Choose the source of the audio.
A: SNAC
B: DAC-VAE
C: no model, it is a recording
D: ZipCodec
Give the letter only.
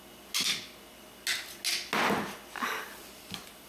C